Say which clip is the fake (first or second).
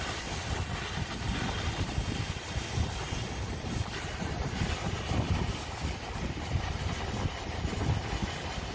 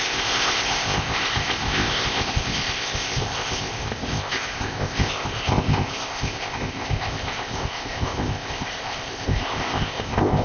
second